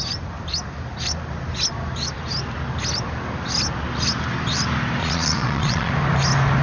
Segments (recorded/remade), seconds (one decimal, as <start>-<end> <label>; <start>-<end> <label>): 0.0-5.0 recorded; 5.0-5.9 remade; 5.9-6.6 recorded